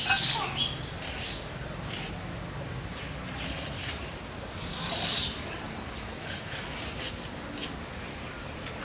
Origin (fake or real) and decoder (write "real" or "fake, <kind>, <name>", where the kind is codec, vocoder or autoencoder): real